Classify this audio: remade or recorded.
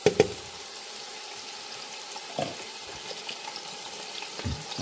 recorded